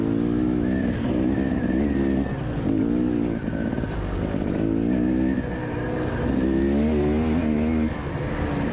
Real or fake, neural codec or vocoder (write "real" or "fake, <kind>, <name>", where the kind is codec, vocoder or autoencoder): real